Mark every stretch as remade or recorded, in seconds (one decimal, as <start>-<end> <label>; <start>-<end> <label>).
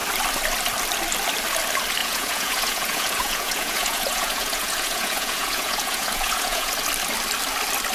0.0-2.0 recorded; 2.0-6.7 remade; 6.7-7.9 recorded